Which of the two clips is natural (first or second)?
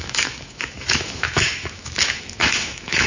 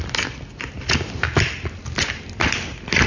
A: second